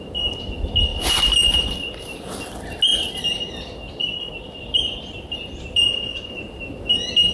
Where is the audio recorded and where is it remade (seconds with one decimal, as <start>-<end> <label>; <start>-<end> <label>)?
0.0-2.9 recorded; 2.9-6.3 remade; 6.3-7.3 recorded